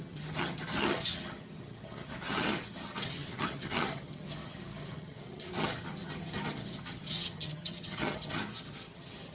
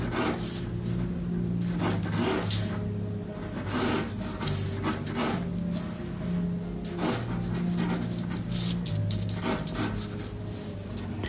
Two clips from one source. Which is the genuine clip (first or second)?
second